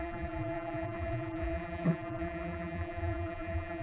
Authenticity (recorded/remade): remade